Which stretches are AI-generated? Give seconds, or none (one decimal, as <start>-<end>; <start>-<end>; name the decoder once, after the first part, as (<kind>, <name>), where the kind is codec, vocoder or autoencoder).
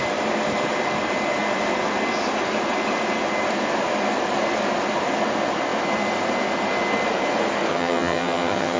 7.7-8.8 (vocoder, HiFi-GAN)